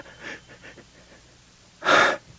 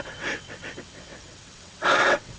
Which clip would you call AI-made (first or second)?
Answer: second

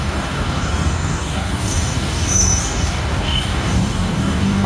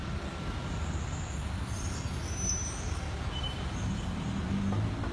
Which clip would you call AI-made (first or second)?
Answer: first